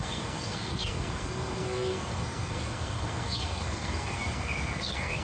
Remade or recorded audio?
remade